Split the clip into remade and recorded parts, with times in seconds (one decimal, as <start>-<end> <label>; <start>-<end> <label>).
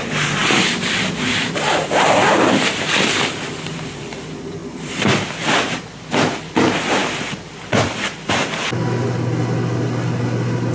0.0-0.4 recorded; 0.4-4.0 remade; 4.0-4.6 recorded; 4.6-6.1 remade; 6.1-7.0 recorded; 7.0-8.3 remade; 8.3-10.7 recorded